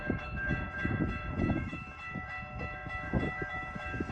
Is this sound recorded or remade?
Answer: remade